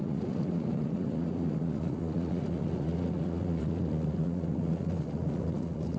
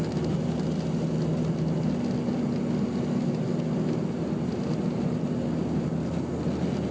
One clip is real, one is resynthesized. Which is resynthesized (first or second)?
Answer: first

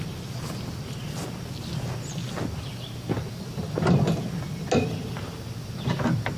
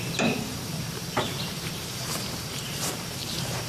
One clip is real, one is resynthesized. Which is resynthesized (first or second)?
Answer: second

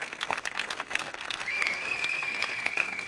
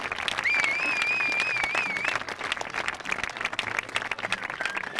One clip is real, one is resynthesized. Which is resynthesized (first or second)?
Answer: first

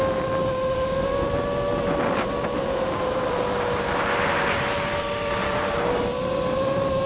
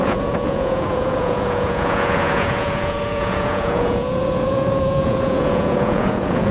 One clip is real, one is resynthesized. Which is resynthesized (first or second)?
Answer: second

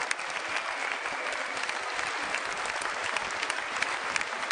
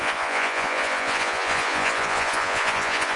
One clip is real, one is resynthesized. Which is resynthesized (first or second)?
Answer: second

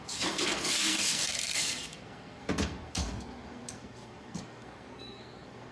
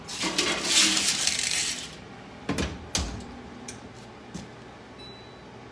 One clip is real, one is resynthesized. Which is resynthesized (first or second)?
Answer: first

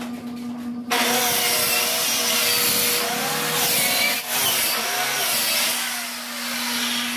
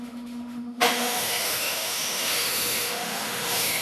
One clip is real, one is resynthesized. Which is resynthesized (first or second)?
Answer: second